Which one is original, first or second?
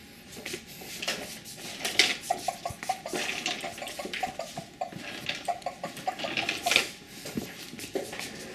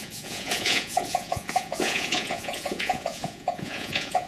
first